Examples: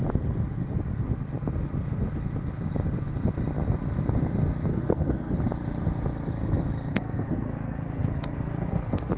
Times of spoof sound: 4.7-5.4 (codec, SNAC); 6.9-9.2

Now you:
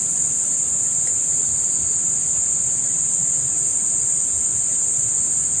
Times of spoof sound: none

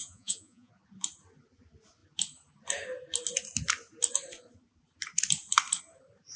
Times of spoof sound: 0.0-0.7 (vocoder, Vocos)

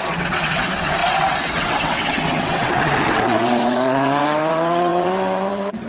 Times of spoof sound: 0.0-5.9 (vocoder, WaveNeXt)